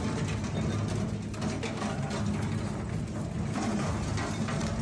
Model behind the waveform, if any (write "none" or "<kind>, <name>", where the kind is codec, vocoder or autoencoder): none